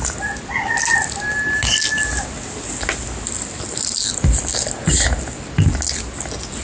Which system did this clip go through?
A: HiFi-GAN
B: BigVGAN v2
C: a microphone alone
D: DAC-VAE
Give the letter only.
C